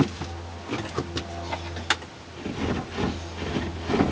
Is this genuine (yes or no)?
yes